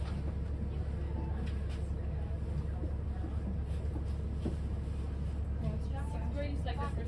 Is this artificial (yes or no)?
no